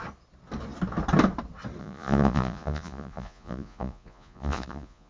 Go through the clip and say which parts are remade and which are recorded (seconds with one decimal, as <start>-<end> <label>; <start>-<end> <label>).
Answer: 0.0-1.8 recorded; 1.8-5.1 remade